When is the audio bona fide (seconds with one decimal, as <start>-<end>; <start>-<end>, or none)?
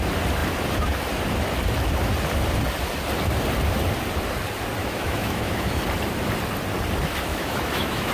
0.0-4.8; 5.8-7.3